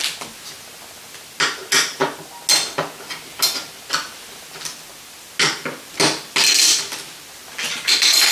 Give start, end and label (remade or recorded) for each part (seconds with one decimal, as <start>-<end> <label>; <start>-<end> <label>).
0.0-8.3 recorded